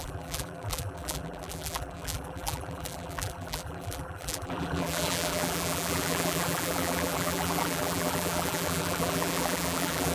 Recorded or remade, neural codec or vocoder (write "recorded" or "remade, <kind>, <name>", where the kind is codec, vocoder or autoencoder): remade, vocoder, BigVGAN v2